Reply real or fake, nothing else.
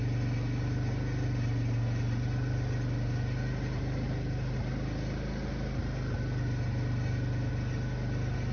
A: real